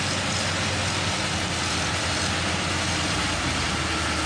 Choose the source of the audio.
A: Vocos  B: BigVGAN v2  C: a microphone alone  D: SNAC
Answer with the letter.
C